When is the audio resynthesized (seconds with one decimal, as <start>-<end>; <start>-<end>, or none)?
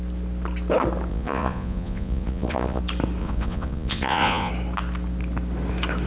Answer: 1.1-2.8; 3.2-4.5